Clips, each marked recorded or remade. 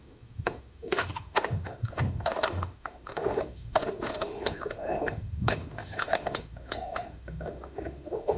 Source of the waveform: remade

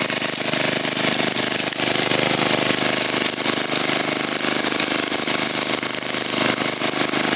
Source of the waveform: recorded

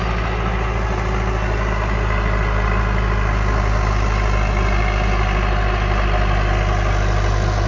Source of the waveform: recorded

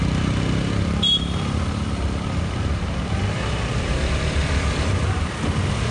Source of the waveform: remade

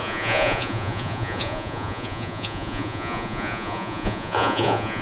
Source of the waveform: remade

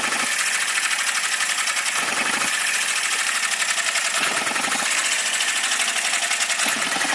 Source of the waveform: remade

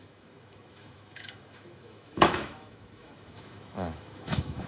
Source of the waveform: remade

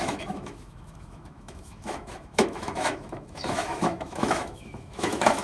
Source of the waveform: remade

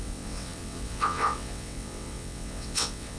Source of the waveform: remade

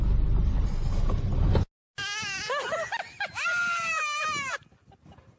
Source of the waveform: recorded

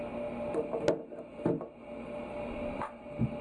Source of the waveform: recorded